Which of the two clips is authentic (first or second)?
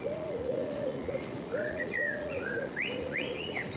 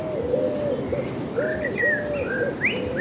second